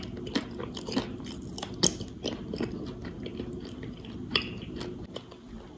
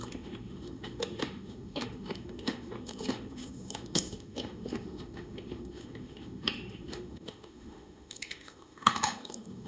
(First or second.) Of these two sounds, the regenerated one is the second